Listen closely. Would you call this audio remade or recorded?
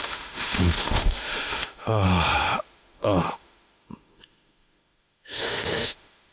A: remade